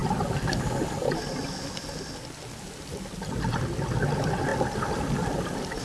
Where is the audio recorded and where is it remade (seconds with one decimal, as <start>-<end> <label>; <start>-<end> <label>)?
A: 0.0-5.8 recorded